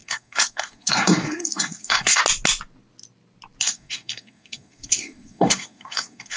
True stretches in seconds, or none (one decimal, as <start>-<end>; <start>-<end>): 2.2-3.6